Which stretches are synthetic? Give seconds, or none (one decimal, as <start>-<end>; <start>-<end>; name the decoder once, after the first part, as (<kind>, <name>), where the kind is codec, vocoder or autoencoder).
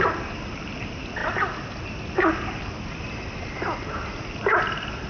none